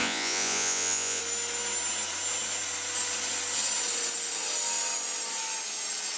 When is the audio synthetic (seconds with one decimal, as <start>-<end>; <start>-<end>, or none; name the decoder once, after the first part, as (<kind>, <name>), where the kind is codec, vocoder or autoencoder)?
0.0-1.2 (vocoder, Vocos)